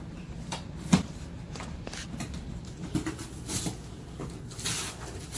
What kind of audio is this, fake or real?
real